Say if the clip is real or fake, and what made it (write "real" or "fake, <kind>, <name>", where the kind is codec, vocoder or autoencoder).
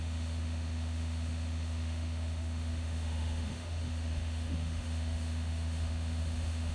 fake, autoencoder, DAC-VAE